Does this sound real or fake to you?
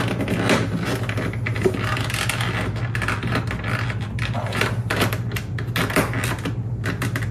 real